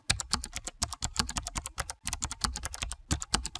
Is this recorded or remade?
recorded